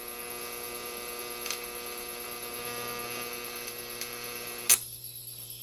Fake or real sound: real